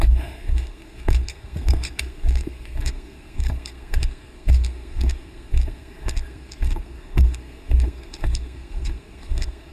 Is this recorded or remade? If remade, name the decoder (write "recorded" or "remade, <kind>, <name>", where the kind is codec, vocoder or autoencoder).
remade, codec, SNAC